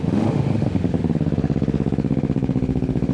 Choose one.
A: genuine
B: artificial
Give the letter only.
B